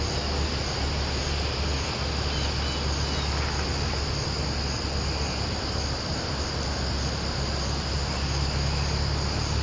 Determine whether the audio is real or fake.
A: real